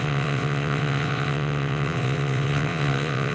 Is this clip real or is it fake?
fake